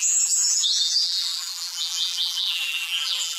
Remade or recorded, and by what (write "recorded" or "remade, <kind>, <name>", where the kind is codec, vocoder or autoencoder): remade, vocoder, BigVGAN v2